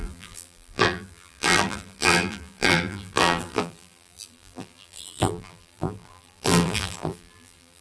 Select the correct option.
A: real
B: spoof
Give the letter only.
B